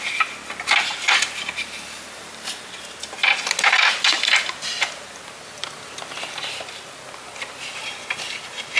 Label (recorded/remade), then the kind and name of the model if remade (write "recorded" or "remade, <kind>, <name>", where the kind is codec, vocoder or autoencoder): recorded